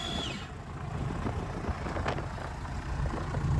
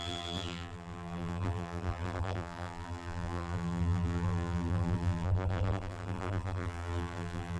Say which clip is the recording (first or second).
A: first